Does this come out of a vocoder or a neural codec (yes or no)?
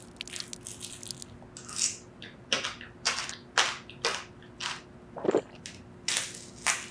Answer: no